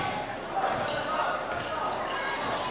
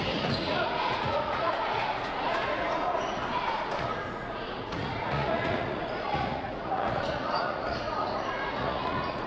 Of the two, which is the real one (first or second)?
first